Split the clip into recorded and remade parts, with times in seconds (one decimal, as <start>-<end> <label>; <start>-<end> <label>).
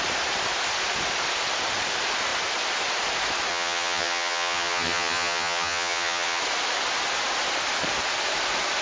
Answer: 0.0-3.5 recorded; 3.5-6.4 remade; 6.4-8.8 recorded